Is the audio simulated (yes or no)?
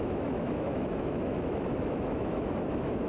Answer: yes